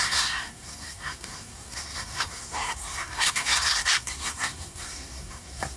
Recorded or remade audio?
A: remade